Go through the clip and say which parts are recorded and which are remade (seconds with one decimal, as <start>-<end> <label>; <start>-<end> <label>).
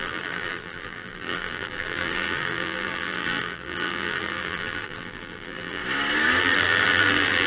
0.0-5.8 remade; 5.8-6.4 recorded; 6.4-7.5 remade